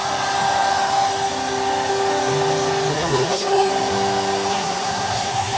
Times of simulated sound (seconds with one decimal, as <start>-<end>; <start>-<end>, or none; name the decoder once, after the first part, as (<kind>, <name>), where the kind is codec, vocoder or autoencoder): 2.9-3.7 (codec, SNAC); 4.5-5.6